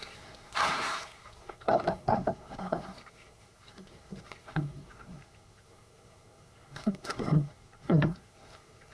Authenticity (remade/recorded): remade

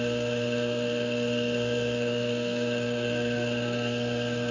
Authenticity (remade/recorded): remade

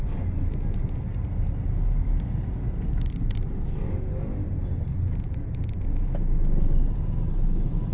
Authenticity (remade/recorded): recorded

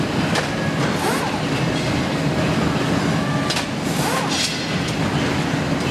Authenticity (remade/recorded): recorded